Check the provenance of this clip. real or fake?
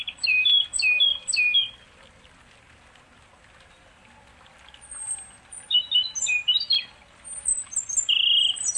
real